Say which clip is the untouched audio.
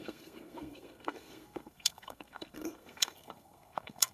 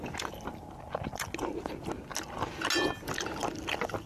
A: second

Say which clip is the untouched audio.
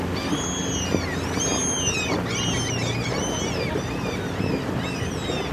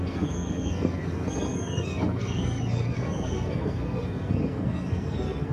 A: first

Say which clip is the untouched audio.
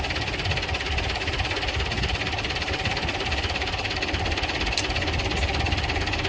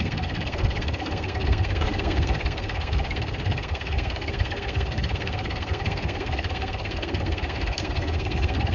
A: first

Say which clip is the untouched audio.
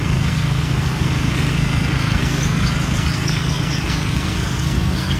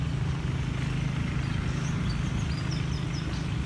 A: second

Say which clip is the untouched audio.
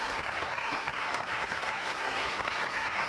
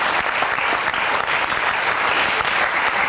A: second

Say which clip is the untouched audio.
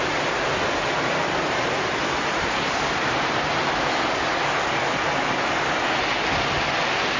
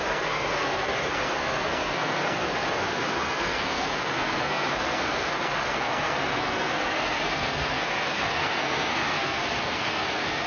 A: first